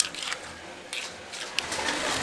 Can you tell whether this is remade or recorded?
recorded